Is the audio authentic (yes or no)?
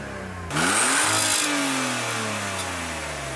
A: yes